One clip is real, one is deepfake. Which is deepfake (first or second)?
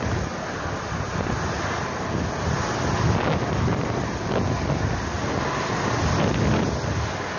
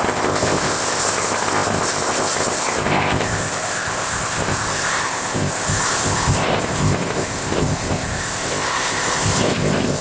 second